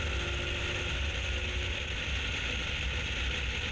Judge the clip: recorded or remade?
recorded